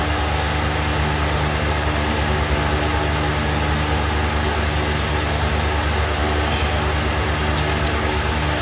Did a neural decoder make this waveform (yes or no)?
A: no